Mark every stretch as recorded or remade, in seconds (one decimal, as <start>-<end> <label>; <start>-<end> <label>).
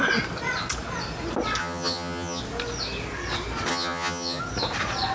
0.0-1.6 recorded; 1.6-2.4 remade; 2.4-3.7 recorded; 3.7-4.4 remade; 4.4-5.1 recorded